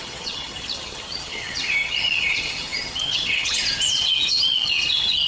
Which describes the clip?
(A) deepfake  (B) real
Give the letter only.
A